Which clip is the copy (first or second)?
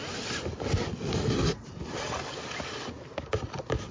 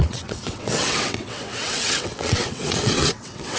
second